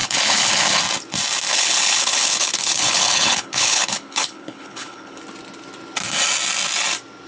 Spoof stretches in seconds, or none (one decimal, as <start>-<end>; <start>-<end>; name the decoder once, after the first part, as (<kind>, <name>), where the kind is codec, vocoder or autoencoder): 0.0-0.8 (codec, HILCodec); 1.5-5.2